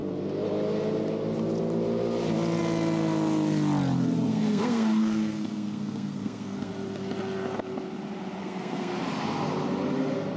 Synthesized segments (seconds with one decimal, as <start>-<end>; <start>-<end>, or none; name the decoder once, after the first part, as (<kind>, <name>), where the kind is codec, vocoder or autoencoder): 4.3-6.7 (codec, SNAC); 8.4-8.9